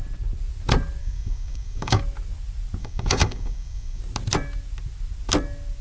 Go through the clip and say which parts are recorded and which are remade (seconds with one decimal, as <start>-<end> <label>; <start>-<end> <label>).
0.0-1.0 recorded; 1.0-2.0 remade; 2.0-2.8 recorded; 2.8-4.0 remade; 4.0-5.8 recorded